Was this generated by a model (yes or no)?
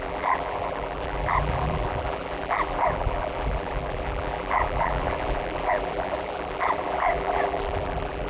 yes